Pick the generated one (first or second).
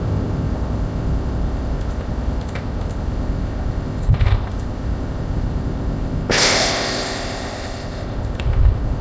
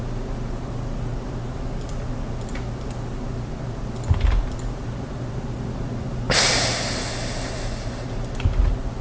first